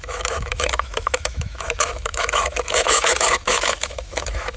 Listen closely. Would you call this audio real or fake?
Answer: fake